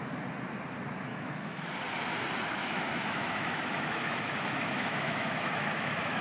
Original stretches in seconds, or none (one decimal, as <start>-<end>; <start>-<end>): 0.0-1.1; 1.7-2.6